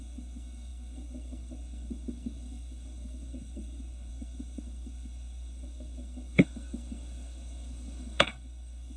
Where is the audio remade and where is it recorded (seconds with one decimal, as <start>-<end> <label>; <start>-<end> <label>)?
0.0-9.0 remade